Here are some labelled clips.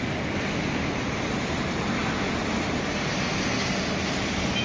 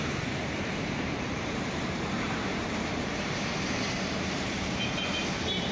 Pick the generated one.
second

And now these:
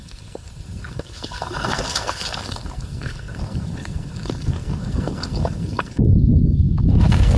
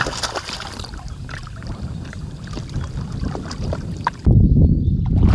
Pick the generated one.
first